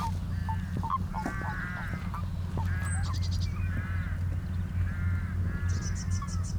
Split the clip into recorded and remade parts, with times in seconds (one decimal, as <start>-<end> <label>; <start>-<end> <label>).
0.0-6.6 recorded